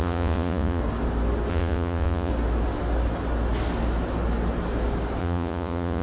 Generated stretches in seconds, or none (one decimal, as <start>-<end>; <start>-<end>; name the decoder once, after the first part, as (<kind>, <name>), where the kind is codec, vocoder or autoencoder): 0.0-0.8 (vocoder, Vocos); 1.5-2.3; 5.2-6.0